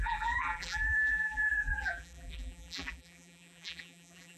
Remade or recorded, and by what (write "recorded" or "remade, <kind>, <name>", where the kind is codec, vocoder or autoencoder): remade, vocoder, BigVGAN v2